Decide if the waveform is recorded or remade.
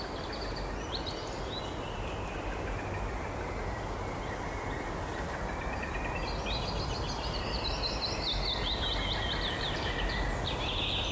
recorded